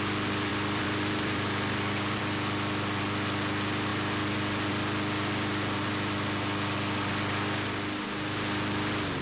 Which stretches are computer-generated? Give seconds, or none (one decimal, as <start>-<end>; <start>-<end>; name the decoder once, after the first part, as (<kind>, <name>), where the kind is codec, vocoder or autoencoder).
0.5-2.2 (vocoder, BigVGAN v2)